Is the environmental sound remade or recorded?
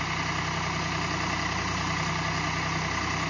recorded